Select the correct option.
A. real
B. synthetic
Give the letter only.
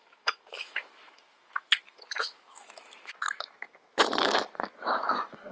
B